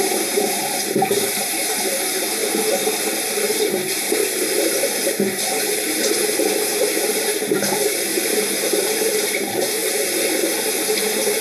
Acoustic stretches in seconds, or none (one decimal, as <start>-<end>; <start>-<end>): 9.8-11.0